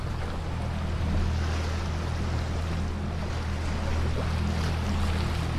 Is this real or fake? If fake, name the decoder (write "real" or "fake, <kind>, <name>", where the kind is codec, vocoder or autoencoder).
real